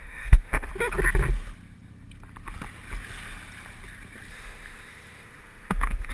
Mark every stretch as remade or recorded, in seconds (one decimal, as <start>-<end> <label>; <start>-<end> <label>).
0.0-0.7 remade; 0.7-4.3 recorded; 4.3-6.1 remade

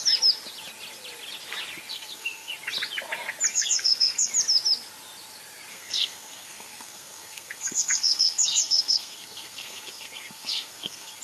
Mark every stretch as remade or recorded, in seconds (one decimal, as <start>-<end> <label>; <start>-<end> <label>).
0.0-1.9 recorded; 1.9-2.5 remade; 2.5-3.5 recorded; 3.5-4.3 remade; 4.3-5.7 recorded; 5.7-11.2 remade